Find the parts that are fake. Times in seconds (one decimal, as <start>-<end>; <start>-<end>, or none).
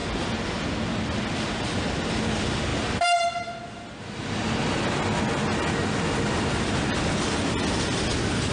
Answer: none